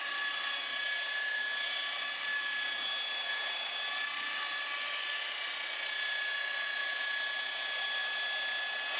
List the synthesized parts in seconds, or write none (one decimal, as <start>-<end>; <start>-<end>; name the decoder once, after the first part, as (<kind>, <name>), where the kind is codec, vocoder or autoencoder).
none